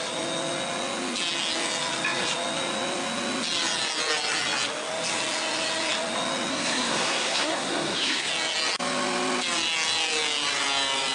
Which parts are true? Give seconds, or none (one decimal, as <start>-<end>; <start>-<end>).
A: 0.0-6.5; 8.3-11.1